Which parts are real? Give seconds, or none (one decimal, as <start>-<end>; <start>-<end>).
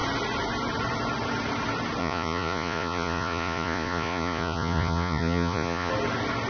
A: 0.0-2.0; 5.9-6.5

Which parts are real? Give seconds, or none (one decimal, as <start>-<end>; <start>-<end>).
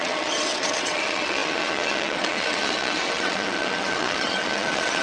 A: none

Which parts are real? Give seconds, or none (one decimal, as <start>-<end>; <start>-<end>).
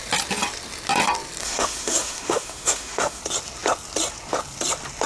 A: 0.0-1.4; 3.2-5.1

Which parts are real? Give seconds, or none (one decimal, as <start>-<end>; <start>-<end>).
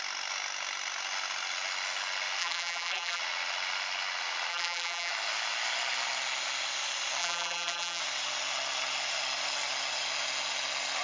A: 0.0-2.4; 3.2-4.5; 5.1-7.2; 8.0-11.0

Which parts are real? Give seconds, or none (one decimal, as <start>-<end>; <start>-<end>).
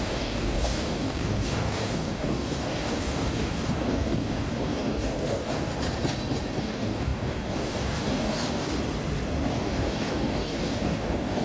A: 5.7-6.6; 8.7-9.5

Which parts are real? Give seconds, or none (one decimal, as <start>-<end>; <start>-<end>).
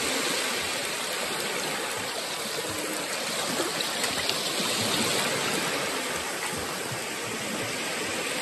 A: 0.0-0.8; 2.4-8.4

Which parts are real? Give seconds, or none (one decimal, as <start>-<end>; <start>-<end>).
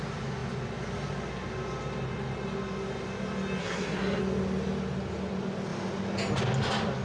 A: 0.0-3.6; 4.2-7.0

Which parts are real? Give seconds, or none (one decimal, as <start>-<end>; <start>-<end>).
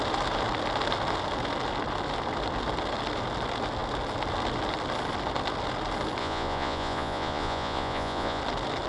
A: 0.0-6.2; 8.4-8.9